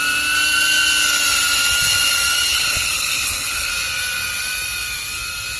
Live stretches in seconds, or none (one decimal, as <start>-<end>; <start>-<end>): 0.0-2.5; 3.7-5.6